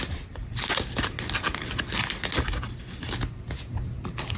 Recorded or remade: recorded